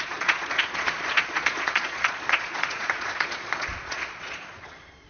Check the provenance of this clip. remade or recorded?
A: remade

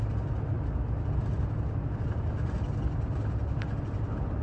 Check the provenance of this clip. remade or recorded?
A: recorded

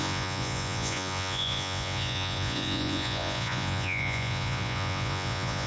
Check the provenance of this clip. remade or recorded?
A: remade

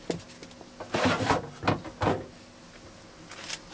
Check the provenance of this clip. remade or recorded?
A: recorded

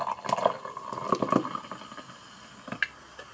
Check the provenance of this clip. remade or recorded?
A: recorded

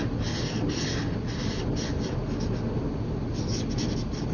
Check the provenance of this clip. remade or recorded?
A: recorded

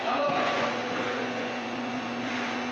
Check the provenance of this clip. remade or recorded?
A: remade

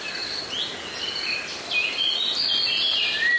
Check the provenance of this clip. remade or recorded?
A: recorded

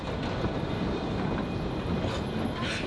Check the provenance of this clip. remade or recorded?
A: recorded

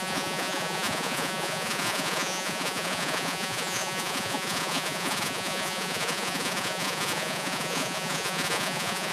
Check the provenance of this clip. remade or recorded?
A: remade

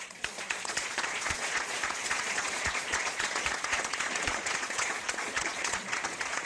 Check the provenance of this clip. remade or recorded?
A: remade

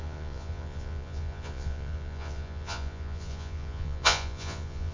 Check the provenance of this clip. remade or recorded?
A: remade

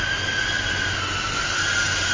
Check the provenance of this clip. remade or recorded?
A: recorded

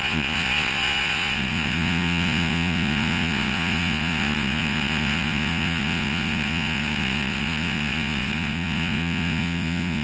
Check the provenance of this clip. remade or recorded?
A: remade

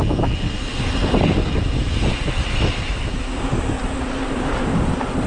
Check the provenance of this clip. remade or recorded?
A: recorded